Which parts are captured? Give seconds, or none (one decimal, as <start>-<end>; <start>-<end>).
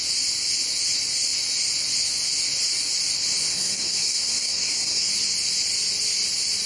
0.0-3.5; 5.1-6.7